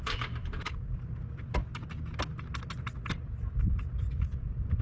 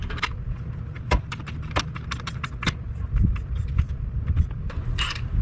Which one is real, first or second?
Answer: first